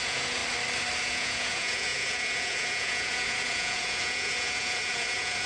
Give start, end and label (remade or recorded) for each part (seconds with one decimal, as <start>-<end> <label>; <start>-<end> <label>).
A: 0.0-0.4 remade; 0.4-1.0 recorded; 1.0-5.5 remade